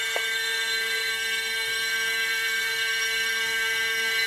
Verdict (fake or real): fake